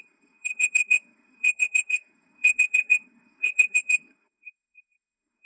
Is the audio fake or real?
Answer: fake